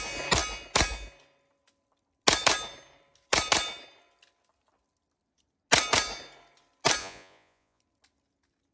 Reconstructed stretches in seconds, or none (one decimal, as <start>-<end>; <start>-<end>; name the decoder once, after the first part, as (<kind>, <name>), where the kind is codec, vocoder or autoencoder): 7.0-7.8 (vocoder, Vocos)